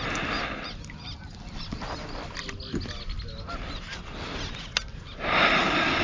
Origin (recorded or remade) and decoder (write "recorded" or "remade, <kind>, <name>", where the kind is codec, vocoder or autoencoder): recorded